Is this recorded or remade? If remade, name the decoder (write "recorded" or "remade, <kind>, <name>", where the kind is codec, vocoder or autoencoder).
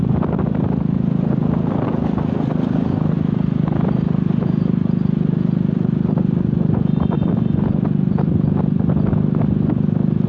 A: recorded